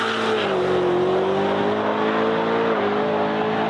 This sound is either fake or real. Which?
real